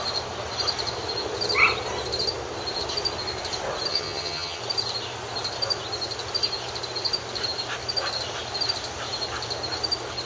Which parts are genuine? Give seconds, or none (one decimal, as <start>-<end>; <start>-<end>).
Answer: 0.0-3.9; 4.6-10.3